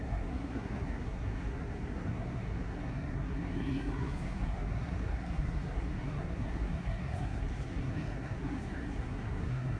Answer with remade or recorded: remade